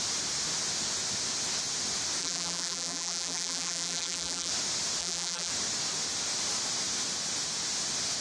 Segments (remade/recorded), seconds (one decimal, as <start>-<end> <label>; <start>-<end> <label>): 0.0-2.2 recorded; 2.2-4.5 remade; 4.5-5.0 recorded; 5.0-5.5 remade; 5.5-8.2 recorded